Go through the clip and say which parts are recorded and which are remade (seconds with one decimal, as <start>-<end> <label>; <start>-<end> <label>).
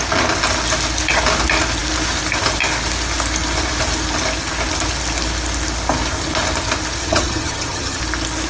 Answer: 0.0-7.0 recorded; 7.0-8.0 remade; 8.0-8.5 recorded